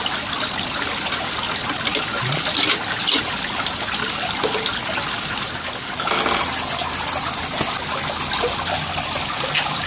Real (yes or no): yes